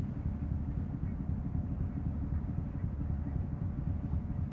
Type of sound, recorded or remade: recorded